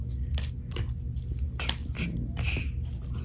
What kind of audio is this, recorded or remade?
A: recorded